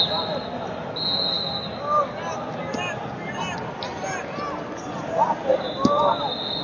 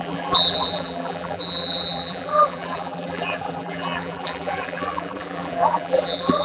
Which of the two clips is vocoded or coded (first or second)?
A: second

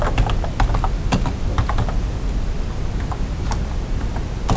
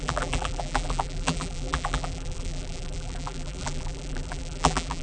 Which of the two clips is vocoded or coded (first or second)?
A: second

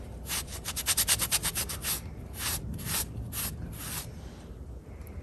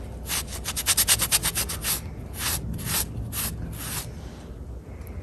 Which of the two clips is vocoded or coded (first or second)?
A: first